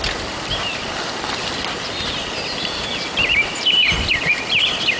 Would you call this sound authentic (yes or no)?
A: no